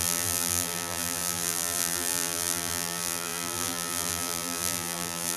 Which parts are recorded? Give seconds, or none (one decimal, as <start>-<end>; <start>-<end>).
none